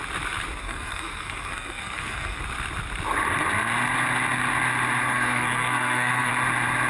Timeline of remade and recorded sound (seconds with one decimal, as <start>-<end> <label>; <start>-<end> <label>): 0.0-0.6 recorded; 0.6-2.4 remade; 2.4-5.1 recorded; 5.1-6.3 remade; 6.3-6.9 recorded